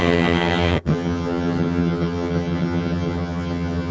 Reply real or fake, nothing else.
fake